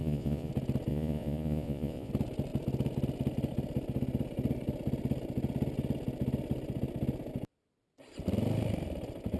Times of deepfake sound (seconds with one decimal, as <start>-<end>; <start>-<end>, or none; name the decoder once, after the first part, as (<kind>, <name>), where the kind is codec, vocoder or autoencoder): 0.0-0.5 (vocoder, Vocos); 0.9-2.1